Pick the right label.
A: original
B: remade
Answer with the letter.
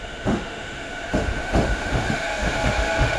B